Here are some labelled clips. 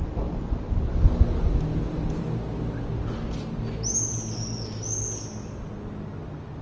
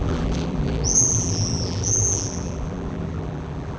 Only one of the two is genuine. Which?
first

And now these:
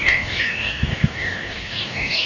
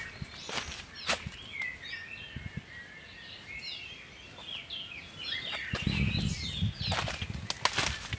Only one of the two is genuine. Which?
second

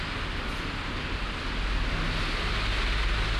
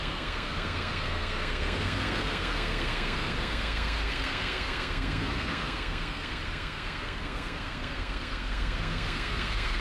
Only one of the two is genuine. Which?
first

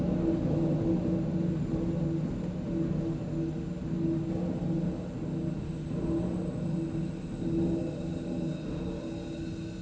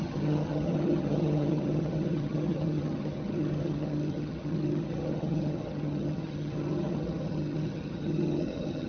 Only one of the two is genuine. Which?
first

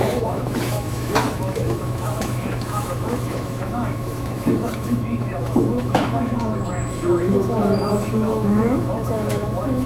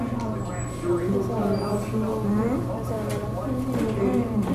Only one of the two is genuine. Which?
second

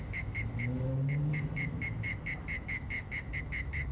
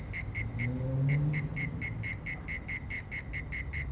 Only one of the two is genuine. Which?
second